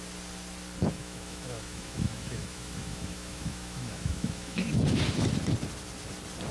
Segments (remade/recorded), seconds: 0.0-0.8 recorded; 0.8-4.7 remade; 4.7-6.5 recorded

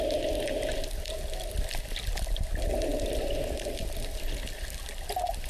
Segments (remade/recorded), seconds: 0.0-5.5 recorded

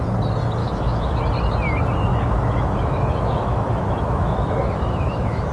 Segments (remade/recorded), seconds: 0.0-0.6 recorded; 0.6-1.2 remade; 1.2-2.1 recorded; 2.1-5.5 remade

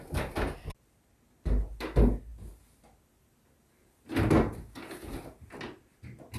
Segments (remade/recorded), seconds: 0.0-6.4 recorded

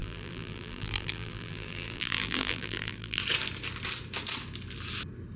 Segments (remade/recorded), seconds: 0.0-3.2 remade; 3.2-5.4 recorded

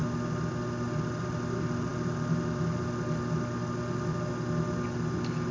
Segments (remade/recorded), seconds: 0.0-5.5 recorded

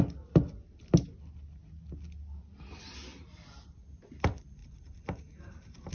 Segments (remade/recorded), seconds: 0.0-4.6 recorded; 4.6-5.9 remade

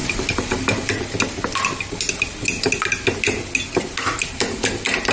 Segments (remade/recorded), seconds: 0.0-0.6 remade; 0.6-5.1 recorded